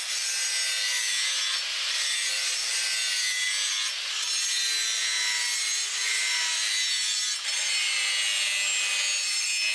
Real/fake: real